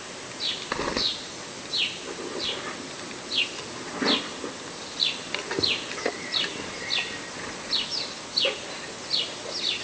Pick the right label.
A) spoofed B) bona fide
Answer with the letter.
B